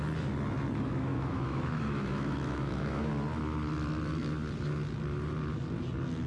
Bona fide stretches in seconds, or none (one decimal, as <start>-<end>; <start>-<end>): 0.0-1.1; 3.1-6.3